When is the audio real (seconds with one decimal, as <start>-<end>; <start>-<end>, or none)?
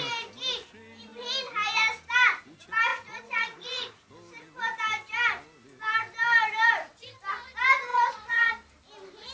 0.0-2.9; 4.1-7.9; 8.5-9.3